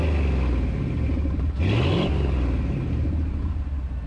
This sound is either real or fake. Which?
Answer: real